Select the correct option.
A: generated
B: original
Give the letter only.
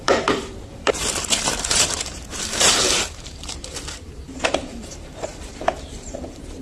A